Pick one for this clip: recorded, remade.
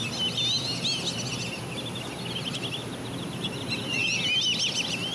recorded